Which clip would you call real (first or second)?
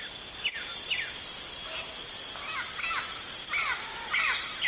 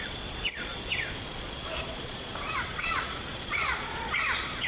first